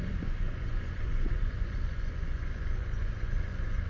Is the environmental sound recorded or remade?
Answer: remade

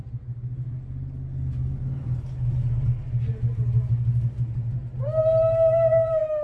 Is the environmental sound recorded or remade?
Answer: recorded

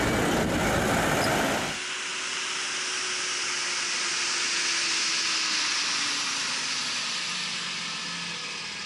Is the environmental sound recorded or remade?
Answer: recorded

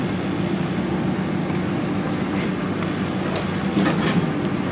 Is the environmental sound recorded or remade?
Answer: recorded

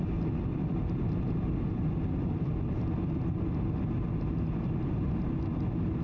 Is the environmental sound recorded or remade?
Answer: recorded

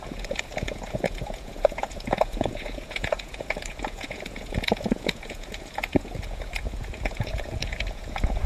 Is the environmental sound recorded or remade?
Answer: remade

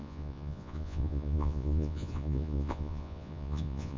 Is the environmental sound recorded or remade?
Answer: remade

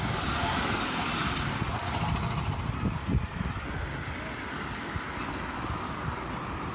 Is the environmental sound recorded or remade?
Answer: recorded